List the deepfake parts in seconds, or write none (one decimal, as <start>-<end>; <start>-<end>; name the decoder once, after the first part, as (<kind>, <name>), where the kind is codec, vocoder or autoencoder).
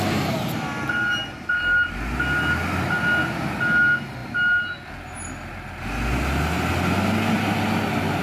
none